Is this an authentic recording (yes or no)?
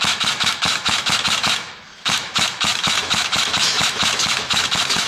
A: no